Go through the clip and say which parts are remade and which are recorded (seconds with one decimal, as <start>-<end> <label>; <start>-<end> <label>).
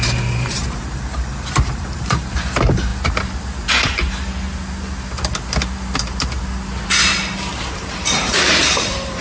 0.0-2.9 remade; 2.9-7.7 recorded; 7.7-9.2 remade